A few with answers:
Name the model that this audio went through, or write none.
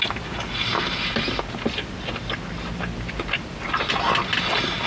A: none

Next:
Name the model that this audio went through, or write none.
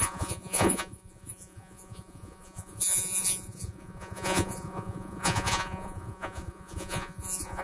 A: vocoder, Vocos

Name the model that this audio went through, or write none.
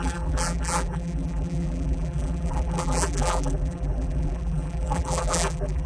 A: vocoder, BigVGAN v2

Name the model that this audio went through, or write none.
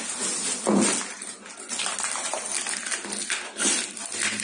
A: none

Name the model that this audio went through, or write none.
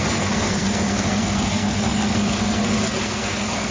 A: codec, SNAC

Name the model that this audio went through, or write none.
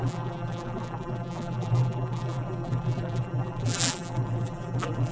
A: vocoder, BigVGAN v2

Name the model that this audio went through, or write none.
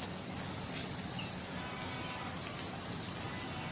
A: none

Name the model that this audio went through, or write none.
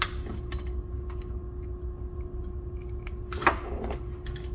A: none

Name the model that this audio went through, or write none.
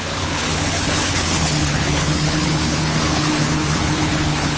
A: codec, HILCodec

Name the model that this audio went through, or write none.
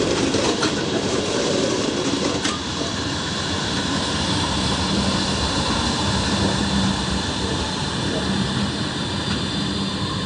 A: vocoder, BigVGAN v2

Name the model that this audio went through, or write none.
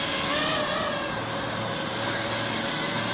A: none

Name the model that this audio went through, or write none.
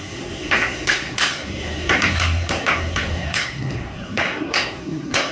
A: codec, SNAC